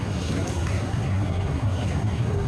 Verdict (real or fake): fake